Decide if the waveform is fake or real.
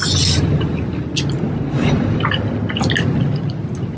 real